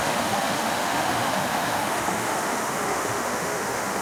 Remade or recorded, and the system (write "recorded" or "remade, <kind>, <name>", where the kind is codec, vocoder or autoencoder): remade, autoencoder, DAC-VAE